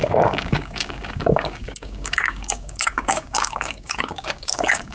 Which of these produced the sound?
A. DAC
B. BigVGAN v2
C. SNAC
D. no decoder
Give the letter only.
A